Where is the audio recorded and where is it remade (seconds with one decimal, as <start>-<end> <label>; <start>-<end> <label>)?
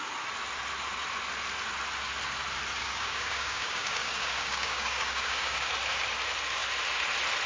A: 0.0-2.8 recorded; 2.8-5.7 remade; 5.7-7.5 recorded